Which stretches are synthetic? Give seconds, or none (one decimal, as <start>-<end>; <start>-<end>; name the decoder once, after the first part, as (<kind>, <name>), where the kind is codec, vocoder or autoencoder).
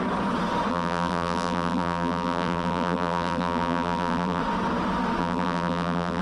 0.7-4.4 (vocoder, BigVGAN v2); 5.2-6.2